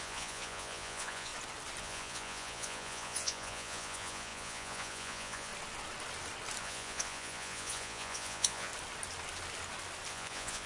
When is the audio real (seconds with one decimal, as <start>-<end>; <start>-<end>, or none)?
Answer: 1.3-1.8; 5.5-6.6; 8.7-10.1